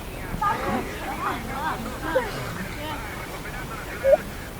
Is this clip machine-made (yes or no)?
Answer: yes